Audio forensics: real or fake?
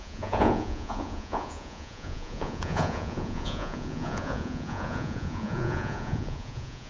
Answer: fake